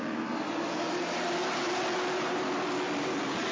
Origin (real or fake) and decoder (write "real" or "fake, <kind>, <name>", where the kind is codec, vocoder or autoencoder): real